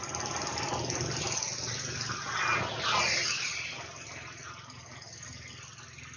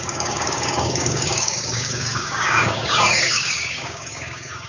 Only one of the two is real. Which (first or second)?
first